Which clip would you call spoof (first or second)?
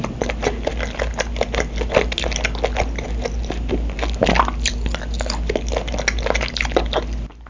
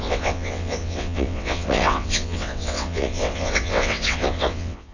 second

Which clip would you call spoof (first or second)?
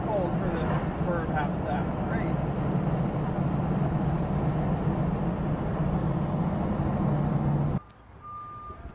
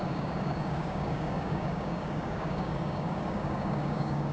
second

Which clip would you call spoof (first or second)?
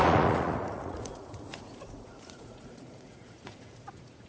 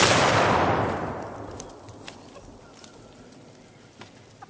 first